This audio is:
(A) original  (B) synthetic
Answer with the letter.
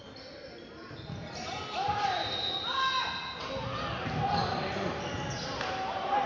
A